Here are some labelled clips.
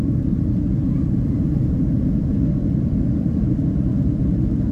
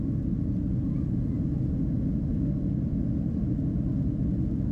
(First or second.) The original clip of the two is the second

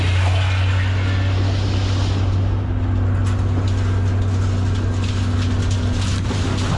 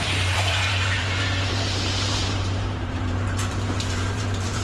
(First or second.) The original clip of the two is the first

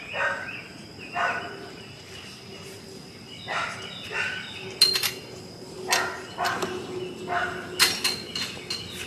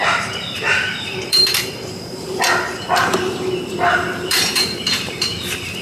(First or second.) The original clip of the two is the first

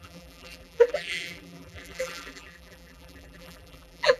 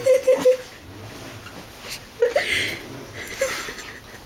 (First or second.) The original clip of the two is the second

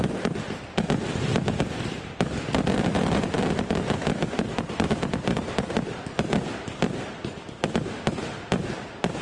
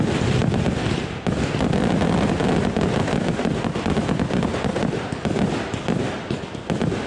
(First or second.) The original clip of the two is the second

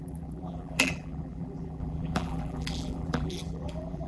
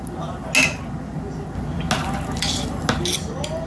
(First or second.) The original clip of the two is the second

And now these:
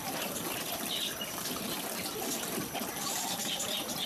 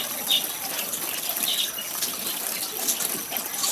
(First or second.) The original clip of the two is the second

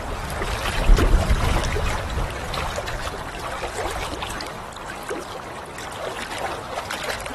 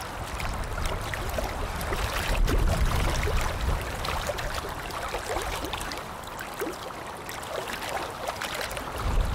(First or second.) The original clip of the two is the first